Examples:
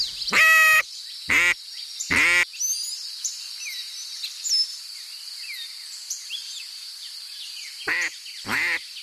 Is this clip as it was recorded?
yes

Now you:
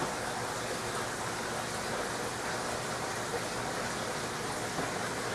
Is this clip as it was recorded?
yes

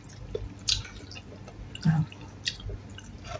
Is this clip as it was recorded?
yes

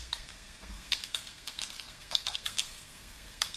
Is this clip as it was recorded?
no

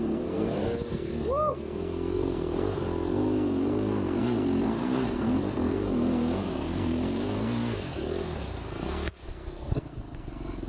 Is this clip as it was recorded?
no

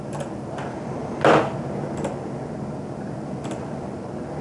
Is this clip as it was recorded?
yes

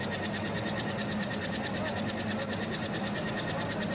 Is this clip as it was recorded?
yes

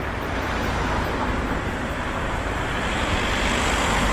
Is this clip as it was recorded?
yes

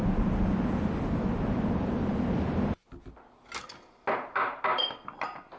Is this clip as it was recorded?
yes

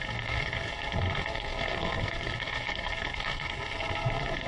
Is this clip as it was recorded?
no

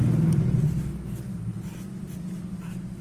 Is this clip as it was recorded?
yes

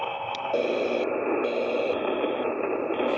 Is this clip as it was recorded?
yes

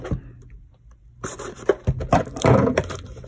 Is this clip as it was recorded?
yes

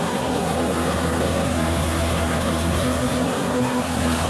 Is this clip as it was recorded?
no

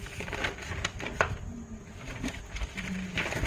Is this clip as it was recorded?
yes